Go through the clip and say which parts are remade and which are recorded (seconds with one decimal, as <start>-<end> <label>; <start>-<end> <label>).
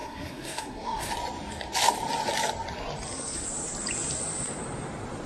0.0-1.1 remade; 1.1-5.3 recorded